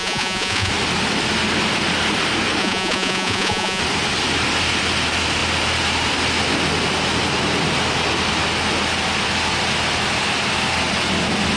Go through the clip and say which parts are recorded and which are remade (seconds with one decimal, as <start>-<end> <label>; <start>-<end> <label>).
0.0-0.7 remade; 0.7-2.6 recorded; 2.6-3.8 remade; 3.8-11.6 recorded